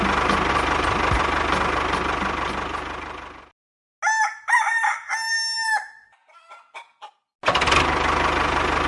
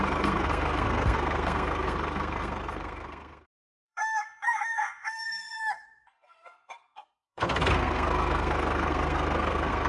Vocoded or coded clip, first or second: second